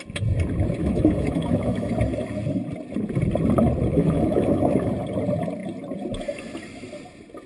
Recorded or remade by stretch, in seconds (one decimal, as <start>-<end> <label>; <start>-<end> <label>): 0.0-0.8 recorded; 0.8-1.9 remade; 1.9-3.9 recorded; 3.9-4.9 remade; 4.9-7.5 recorded